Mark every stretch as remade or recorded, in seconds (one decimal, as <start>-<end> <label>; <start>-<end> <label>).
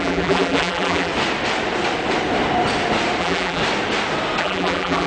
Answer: 0.0-1.1 remade; 1.1-3.2 recorded; 3.2-3.6 remade; 3.6-4.4 recorded; 4.4-5.1 remade